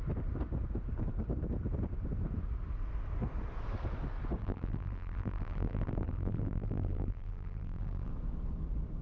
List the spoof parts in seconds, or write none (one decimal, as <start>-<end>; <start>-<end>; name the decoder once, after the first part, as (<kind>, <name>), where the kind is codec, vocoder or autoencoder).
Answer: 4.4-8.1 (vocoder, BigVGAN v2)